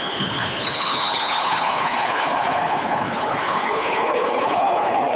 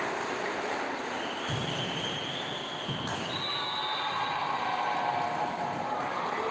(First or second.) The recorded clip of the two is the second